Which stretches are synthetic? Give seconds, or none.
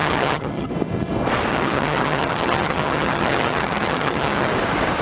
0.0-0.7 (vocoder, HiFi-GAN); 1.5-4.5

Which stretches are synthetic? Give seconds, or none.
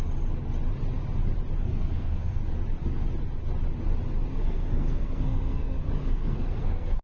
1.6-2.5 (codec, SNAC); 4.3-7.0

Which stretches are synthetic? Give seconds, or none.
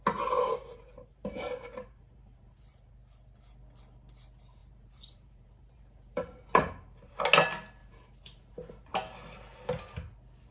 0.5-2.9 (vocoder, BigVGAN v2); 4.6-7.2; 7.8-8.7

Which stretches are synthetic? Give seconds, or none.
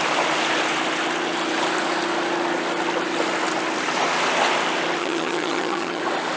5.0-6.0 (vocoder, HiFi-GAN)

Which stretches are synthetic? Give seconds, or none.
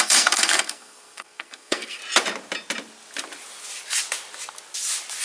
0.0-2.0 (codec, SNAC)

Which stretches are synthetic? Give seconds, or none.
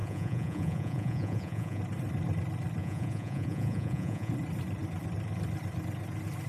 0.0-1.8 (vocoder, Vocos); 2.8-4.3